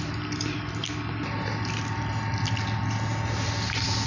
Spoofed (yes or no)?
no